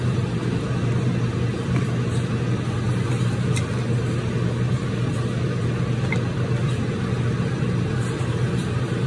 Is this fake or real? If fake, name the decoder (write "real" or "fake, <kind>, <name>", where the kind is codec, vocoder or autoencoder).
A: real